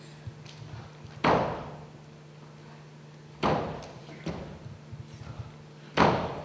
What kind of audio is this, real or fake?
real